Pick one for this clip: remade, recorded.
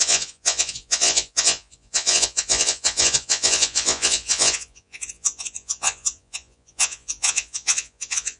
remade